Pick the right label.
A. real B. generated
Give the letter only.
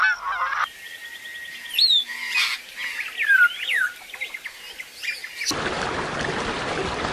A